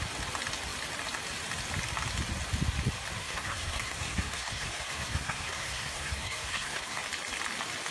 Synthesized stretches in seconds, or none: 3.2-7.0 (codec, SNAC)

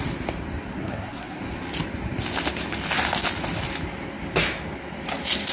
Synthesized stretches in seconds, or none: 0.8-1.4 (codec, SNAC)

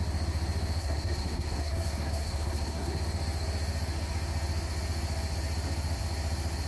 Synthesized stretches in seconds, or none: 0.8-3.0 (codec, SNAC)

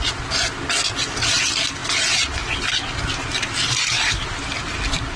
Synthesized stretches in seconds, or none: none

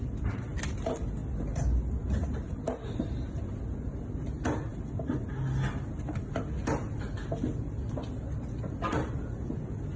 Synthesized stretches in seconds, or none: none